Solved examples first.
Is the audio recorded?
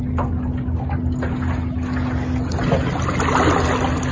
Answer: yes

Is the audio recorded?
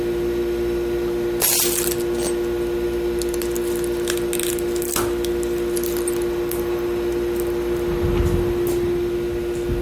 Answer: yes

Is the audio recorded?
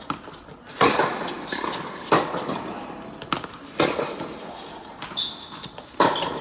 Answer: yes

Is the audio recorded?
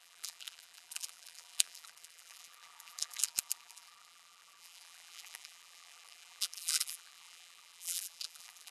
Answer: no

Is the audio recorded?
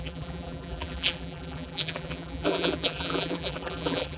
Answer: no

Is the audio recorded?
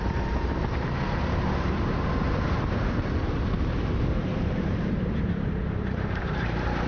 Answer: no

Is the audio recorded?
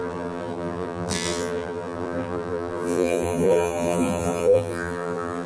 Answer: no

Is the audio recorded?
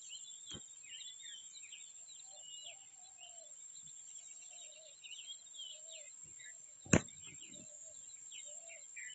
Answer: no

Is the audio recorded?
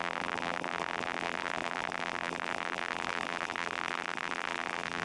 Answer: no